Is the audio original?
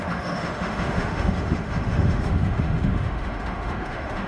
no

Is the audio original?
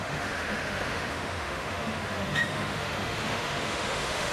no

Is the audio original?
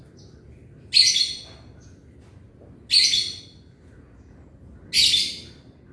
yes